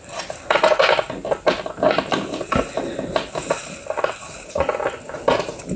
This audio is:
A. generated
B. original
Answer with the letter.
B